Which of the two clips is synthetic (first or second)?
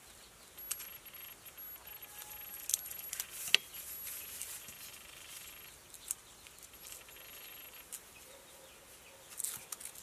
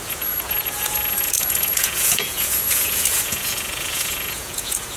second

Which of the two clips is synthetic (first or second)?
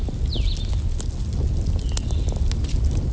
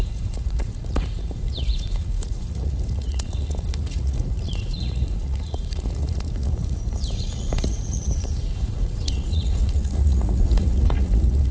second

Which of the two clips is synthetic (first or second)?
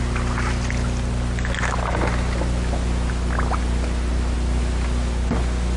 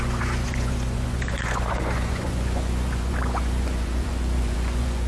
second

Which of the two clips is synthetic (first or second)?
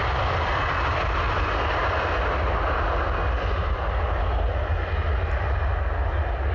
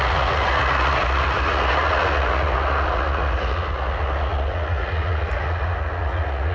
second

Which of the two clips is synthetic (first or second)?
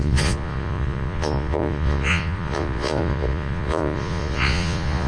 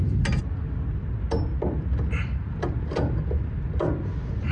first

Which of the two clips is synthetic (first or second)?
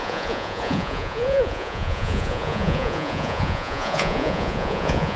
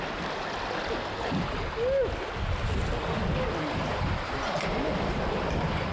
first